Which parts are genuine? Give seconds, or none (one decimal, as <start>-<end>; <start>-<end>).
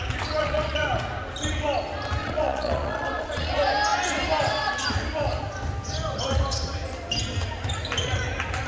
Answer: 0.0-0.4; 0.9-2.2; 3.5-8.7